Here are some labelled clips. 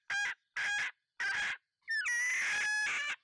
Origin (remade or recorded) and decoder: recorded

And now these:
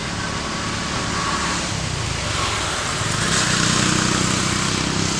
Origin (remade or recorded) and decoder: recorded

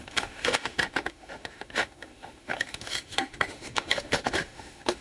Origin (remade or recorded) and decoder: remade, autoencoder, DAC-VAE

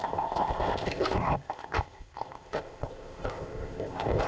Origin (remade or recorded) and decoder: remade, codec, ZipCodec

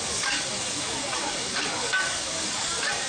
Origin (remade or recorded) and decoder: remade, codec, DAC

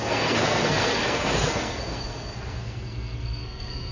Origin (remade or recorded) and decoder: remade, codec, SNAC